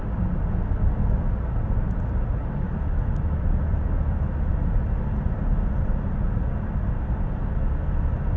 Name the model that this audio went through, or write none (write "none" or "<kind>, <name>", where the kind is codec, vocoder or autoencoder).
none